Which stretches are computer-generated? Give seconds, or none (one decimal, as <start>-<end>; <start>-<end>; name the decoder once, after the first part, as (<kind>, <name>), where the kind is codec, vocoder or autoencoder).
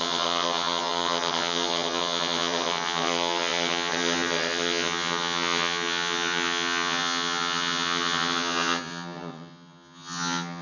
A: 0.0-10.6 (vocoder, HiFi-GAN)